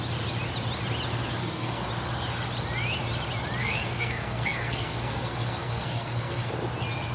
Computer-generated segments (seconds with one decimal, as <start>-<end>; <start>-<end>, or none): 1.4-1.9; 3.6-6.5